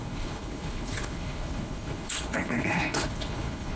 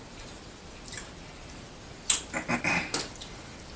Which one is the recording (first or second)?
second